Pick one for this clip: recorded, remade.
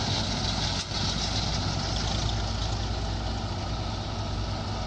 recorded